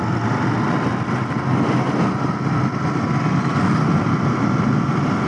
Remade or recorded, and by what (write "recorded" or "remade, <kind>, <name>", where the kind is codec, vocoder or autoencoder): recorded